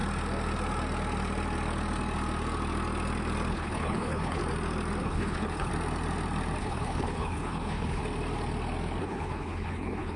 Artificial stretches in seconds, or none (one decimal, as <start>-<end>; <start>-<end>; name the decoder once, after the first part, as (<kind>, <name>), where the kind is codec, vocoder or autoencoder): 3.5-4.4 (codec, HILCodec); 5.0-5.7; 6.6-8.0; 9.0-10.2